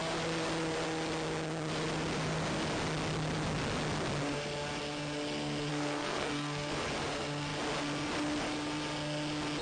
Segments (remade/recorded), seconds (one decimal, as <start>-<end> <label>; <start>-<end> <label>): 0.0-5.7 recorded; 5.7-6.7 remade; 6.7-9.6 recorded